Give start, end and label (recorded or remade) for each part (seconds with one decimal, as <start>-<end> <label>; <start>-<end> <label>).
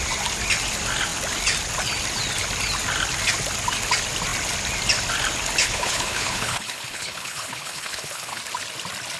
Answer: 0.0-5.6 recorded; 5.6-8.4 remade; 8.4-9.2 recorded